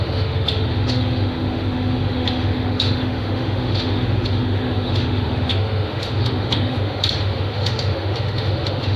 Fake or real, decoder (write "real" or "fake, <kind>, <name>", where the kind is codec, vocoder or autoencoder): fake, autoencoder, DAC-VAE